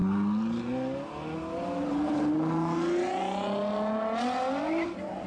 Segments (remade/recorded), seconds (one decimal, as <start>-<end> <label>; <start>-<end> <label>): 0.0-5.3 recorded